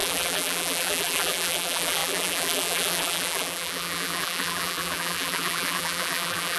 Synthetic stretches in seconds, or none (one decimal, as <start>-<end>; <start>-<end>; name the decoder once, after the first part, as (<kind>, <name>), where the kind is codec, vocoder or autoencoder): 0.0-6.6 (vocoder, BigVGAN v2)